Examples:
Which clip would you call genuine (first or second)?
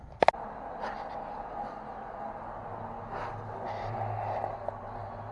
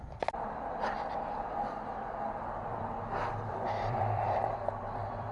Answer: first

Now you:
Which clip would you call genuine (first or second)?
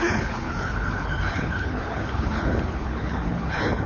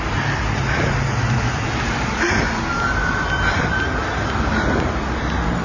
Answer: second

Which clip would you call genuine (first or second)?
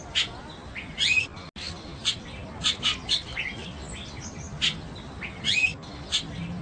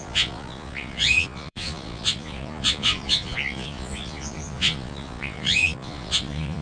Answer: first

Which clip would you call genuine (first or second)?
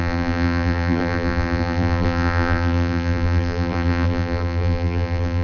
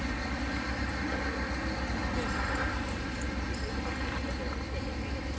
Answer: second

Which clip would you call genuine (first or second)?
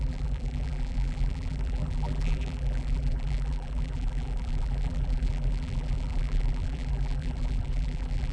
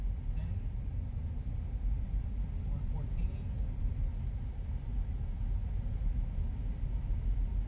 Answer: second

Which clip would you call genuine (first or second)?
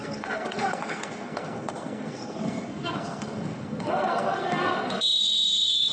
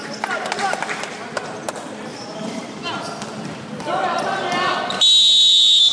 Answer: second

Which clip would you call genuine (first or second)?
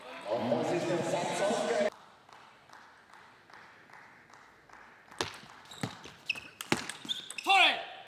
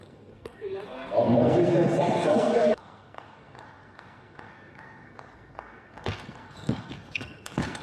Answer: first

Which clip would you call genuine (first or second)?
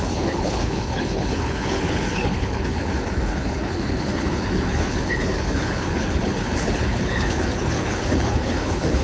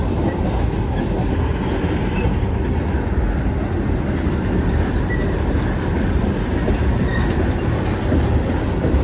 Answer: second